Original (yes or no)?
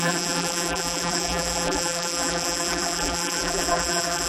no